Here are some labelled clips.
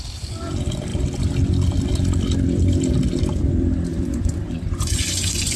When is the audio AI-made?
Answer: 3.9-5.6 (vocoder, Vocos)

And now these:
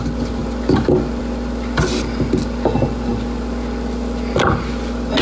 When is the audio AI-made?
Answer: none

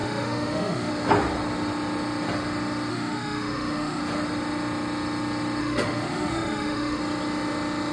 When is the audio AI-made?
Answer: 0.0-0.9 (autoencoder, DAC-VAE); 2.9-4.0; 5.6-7.0

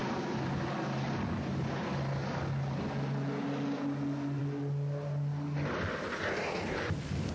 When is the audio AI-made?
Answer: none

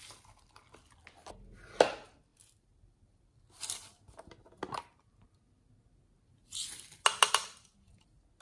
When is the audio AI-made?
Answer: none